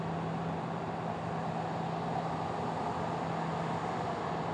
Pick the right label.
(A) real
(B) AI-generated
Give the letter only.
A